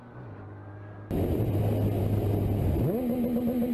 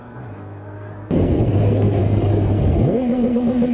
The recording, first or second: first